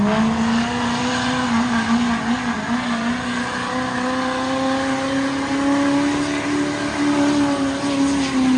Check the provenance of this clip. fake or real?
real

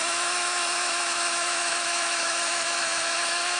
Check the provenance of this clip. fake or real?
fake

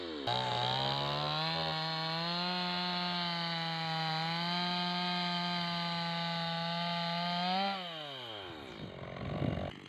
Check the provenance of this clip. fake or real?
real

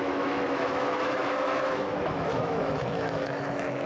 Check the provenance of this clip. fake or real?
fake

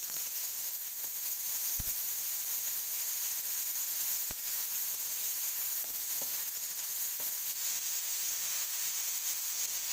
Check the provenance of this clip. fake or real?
fake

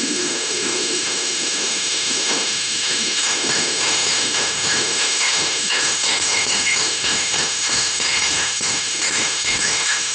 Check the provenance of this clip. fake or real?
fake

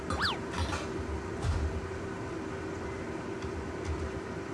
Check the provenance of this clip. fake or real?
real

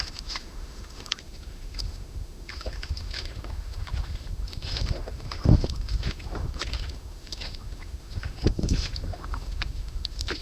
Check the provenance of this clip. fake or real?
fake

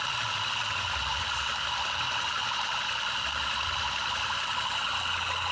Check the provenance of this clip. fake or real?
real